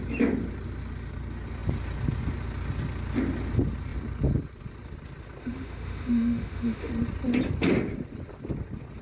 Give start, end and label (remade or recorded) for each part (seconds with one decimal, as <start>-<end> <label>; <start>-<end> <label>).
0.0-5.4 recorded; 5.4-6.9 remade; 6.9-9.0 recorded